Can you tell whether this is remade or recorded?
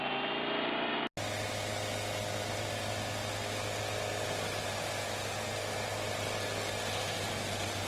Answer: recorded